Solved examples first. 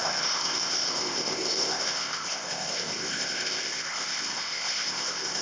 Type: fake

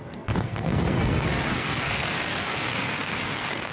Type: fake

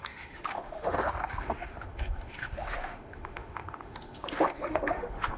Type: fake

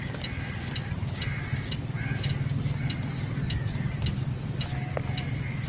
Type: real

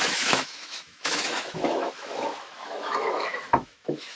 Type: fake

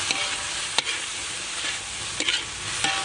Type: real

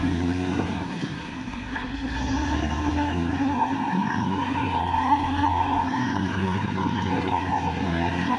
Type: fake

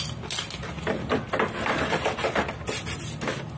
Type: real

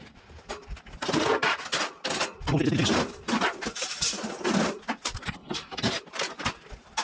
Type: real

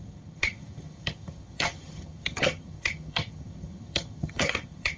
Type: fake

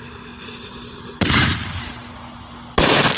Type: real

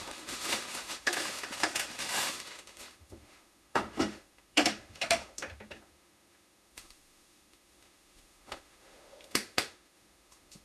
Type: fake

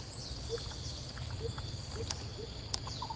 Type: real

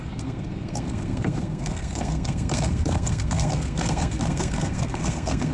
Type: fake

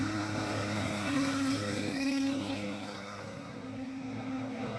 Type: fake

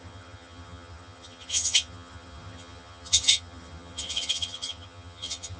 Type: fake